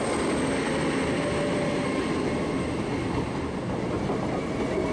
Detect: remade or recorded recorded